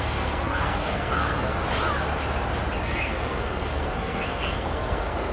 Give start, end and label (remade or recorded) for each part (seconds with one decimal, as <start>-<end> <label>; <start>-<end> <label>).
0.0-1.6 remade; 1.6-2.8 recorded; 2.8-5.3 remade